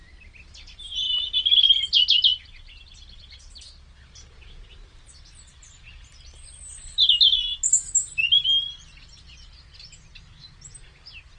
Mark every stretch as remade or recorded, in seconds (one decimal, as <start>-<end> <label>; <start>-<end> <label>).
0.0-11.4 recorded